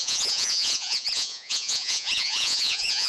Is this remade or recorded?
remade